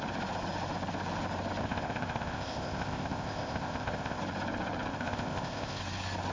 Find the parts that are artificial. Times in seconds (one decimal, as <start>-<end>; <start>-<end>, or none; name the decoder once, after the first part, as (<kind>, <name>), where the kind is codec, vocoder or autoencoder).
1.6-4.2 (codec, ZipCodec); 4.9-5.8